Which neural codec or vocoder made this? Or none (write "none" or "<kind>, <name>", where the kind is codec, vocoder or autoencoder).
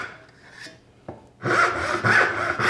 none